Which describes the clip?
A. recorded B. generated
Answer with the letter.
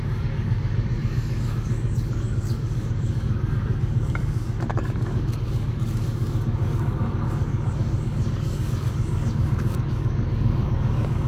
B